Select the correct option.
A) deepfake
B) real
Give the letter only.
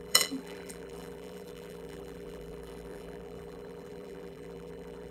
A